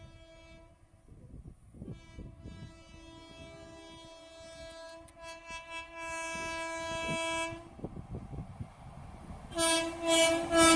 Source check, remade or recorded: recorded